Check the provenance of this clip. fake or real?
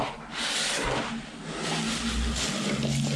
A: real